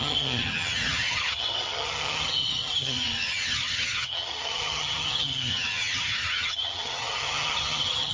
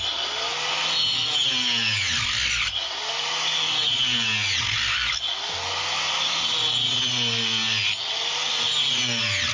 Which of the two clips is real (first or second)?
second